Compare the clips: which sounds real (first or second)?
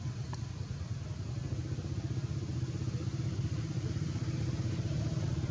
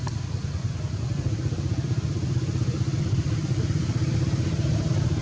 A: first